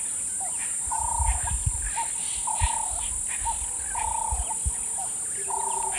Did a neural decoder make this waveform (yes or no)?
no